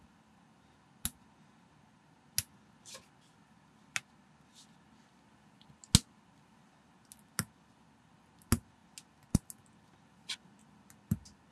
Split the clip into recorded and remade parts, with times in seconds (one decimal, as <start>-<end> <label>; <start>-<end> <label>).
0.0-11.5 recorded